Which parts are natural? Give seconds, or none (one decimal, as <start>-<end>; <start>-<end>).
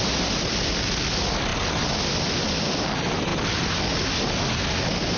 0.0-5.2